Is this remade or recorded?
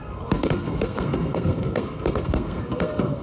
remade